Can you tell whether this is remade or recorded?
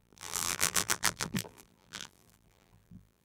remade